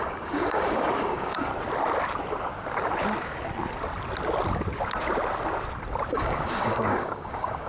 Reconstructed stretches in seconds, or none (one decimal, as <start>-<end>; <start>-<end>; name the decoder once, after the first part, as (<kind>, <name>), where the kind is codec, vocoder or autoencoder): 0.0-1.5 (codec, DAC); 6.1-7.7